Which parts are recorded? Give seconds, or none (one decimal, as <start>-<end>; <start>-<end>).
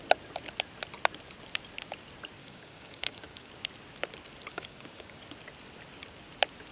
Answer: 0.0-2.4; 3.5-4.5; 5.2-6.7